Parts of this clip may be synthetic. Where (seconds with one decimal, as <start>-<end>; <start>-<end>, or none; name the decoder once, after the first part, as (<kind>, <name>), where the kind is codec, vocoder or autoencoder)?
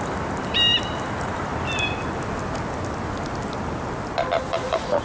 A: 0.0-1.5 (vocoder, BigVGAN v2); 4.5-5.0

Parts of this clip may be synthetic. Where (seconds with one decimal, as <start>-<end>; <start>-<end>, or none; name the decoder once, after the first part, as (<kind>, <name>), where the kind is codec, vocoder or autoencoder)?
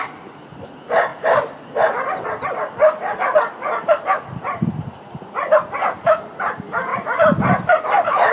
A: none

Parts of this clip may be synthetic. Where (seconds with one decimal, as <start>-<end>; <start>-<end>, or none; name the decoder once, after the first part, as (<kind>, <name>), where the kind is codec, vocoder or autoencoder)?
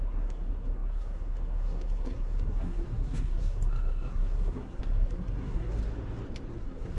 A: 0.0-5.8 (codec, SNAC); 6.5-7.0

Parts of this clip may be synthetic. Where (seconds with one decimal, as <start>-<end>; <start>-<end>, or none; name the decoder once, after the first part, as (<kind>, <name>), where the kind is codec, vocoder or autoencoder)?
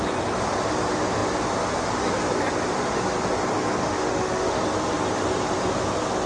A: 3.8-4.6 (autoencoder, DAC-VAE)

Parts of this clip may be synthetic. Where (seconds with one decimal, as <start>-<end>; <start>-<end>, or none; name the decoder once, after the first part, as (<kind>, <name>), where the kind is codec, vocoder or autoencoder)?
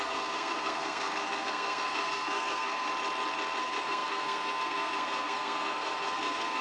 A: 0.0-2.9 (codec, SNAC); 3.6-6.6